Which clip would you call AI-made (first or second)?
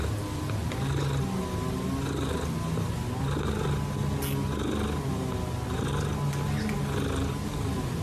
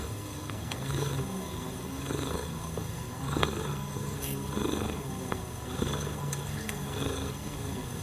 second